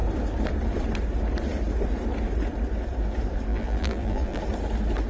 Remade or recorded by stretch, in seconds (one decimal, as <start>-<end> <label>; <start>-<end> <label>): 0.0-3.5 recorded; 3.5-4.4 remade; 4.4-5.1 recorded